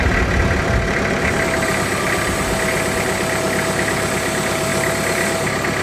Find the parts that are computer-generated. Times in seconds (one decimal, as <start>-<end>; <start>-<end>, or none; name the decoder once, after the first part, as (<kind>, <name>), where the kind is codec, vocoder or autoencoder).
none